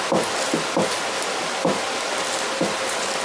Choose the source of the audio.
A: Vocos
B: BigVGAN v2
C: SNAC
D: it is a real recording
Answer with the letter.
B